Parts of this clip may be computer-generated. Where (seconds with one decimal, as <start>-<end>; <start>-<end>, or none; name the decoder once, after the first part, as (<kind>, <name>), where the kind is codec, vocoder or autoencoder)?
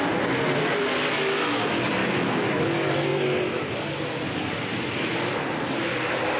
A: 2.0-2.6 (autoencoder, DAC-VAE)